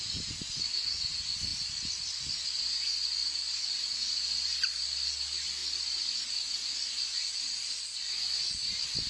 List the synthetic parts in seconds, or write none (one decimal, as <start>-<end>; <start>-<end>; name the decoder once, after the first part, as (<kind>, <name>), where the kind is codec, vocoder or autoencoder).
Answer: none